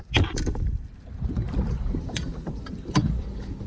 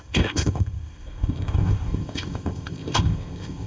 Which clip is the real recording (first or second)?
first